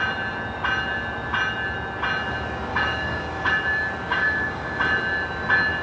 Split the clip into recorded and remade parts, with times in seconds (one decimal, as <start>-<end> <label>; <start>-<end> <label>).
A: 0.0-2.7 recorded; 2.7-3.5 remade; 3.5-4.1 recorded; 4.1-4.8 remade; 4.8-5.8 recorded